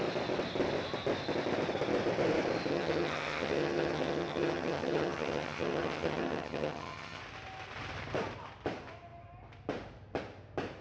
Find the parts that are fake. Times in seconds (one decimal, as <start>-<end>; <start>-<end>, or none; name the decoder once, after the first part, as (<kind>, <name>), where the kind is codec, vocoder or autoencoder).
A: 2.7-7.2 (vocoder, HiFi-GAN)